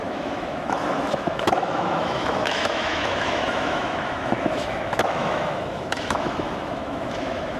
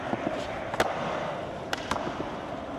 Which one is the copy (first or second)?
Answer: first